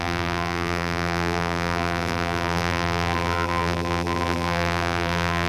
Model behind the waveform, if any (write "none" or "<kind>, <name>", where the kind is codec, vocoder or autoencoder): vocoder, BigVGAN v2